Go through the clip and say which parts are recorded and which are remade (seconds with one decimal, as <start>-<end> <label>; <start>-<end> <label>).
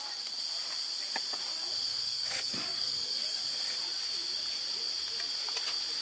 0.0-1.9 recorded; 1.9-3.4 remade; 3.4-6.0 recorded